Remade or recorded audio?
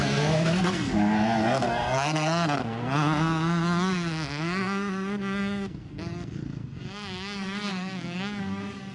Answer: remade